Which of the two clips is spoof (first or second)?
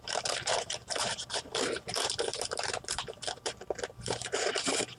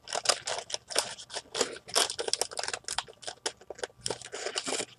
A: first